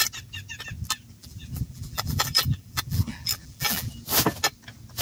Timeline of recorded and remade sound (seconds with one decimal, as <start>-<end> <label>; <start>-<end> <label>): 0.0-1.2 recorded; 1.2-3.9 remade; 3.9-5.0 recorded